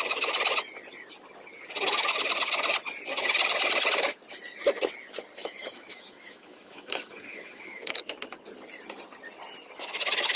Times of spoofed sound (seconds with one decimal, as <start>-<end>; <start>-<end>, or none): 5.4-8.0